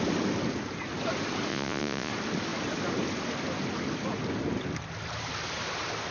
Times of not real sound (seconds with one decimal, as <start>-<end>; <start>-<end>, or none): 1.5-2.1